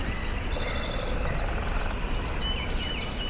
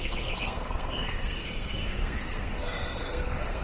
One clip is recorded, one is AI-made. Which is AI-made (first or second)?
second